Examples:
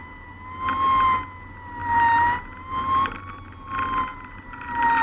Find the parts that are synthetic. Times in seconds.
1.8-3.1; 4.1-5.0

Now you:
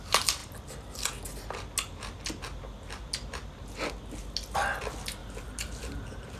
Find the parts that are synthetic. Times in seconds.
5.2-6.4

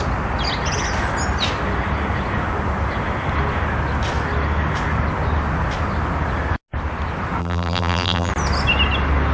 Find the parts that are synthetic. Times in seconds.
7.4-8.3

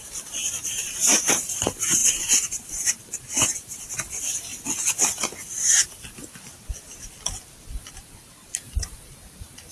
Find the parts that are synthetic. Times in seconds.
0.0-4.5; 7.9-9.7

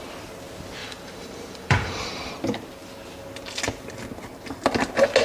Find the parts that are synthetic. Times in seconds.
0.8-2.3

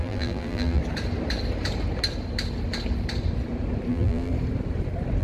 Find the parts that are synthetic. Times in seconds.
0.0-0.8; 3.9-4.3